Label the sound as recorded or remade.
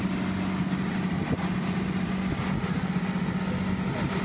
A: recorded